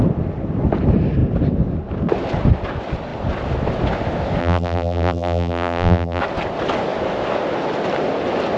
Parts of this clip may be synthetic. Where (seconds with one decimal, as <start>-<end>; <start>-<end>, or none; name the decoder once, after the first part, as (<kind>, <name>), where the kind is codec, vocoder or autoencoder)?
4.4-6.2 (vocoder, BigVGAN v2)